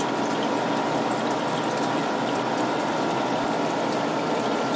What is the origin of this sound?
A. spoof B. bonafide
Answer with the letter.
B